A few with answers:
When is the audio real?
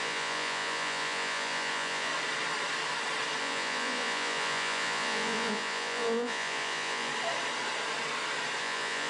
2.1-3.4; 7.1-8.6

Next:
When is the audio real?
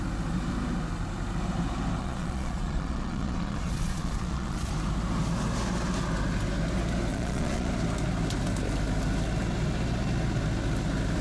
0.0-2.0; 4.7-7.1; 7.7-11.2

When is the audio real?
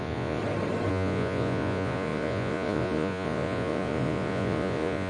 0.4-0.9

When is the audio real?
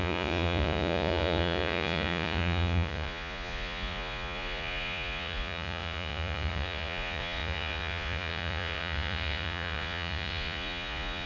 none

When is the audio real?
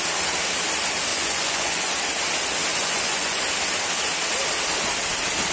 0.0-1.1; 1.9-2.7; 3.4-5.5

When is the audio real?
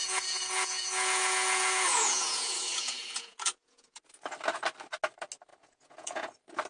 4.0-5.5; 6.3-6.7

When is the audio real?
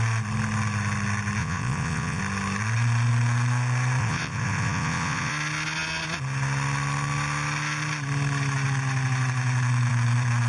0.0-1.4; 2.2-4.0; 5.3-10.5